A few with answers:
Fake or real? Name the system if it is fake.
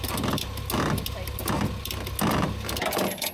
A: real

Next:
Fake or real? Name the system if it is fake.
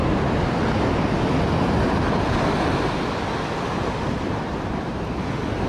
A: real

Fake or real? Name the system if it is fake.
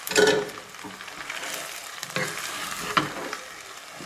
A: real